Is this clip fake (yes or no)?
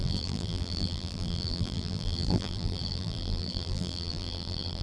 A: yes